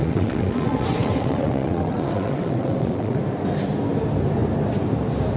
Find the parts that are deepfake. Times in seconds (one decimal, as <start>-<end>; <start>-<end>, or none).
0.0-3.2

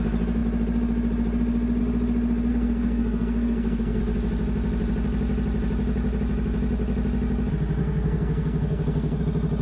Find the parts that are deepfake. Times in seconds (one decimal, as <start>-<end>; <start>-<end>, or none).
2.5-4.0; 7.8-9.2

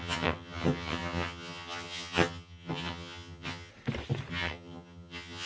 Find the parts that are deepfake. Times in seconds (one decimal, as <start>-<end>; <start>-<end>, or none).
0.0-3.7; 4.3-5.5